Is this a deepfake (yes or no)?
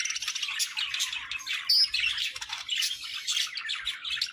no